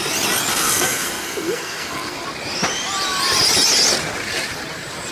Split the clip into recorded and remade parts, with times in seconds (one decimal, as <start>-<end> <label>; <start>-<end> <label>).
0.0-0.5 recorded; 0.5-2.2 remade; 2.2-5.1 recorded